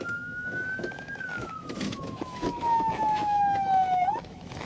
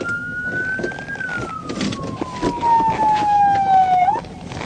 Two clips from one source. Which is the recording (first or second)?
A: second